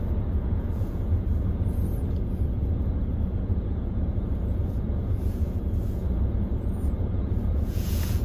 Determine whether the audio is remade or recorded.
remade